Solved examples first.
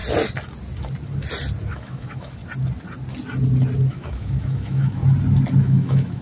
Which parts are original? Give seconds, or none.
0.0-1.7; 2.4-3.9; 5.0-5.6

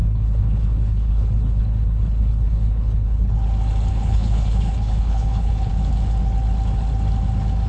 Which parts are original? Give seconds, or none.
3.3-3.9; 5.7-7.7

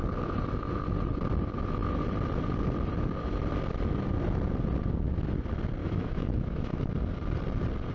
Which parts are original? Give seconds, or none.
0.0-5.8; 6.9-7.9

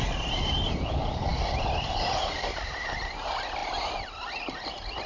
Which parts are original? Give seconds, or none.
0.0-5.1

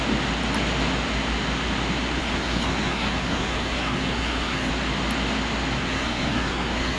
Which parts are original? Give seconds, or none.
0.0-2.2; 4.7-5.8

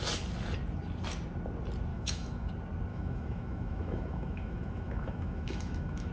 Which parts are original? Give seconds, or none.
0.0-1.9; 2.5-2.9

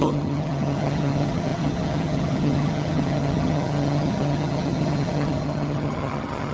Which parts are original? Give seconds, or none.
none